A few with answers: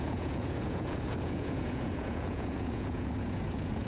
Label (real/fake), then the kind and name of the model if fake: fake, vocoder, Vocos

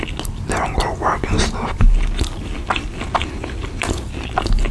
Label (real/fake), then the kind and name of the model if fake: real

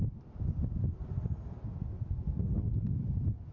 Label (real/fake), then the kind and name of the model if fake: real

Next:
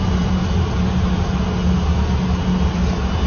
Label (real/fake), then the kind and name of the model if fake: real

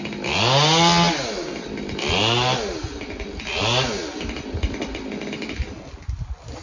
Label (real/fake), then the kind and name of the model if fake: real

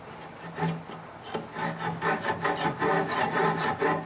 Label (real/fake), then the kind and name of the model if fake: real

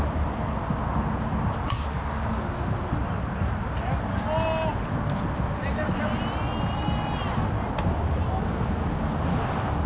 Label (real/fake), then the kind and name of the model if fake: real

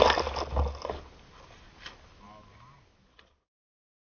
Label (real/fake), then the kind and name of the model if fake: real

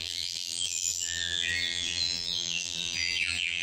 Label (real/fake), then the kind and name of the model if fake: fake, vocoder, BigVGAN v2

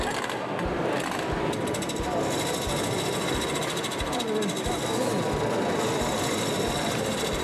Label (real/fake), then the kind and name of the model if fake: fake, vocoder, BigVGAN v2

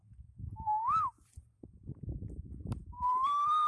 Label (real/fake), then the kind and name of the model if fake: fake, vocoder, BigVGAN v2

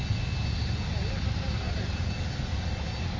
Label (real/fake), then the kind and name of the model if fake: real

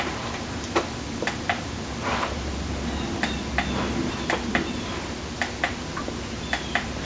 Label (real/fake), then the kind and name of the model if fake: real